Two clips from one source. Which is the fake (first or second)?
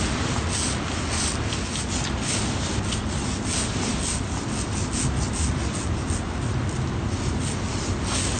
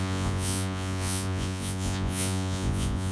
second